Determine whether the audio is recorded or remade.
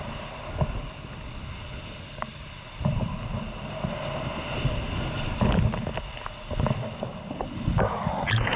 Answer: recorded